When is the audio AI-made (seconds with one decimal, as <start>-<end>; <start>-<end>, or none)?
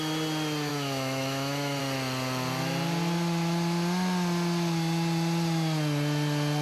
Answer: 0.7-1.8